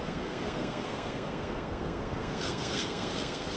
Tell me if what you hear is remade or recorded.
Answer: remade